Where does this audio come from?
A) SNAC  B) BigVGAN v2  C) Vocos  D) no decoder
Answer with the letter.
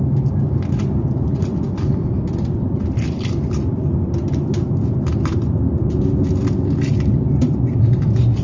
B